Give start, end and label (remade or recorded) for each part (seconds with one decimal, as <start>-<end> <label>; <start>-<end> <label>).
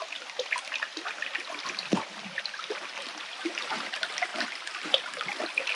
0.0-5.8 recorded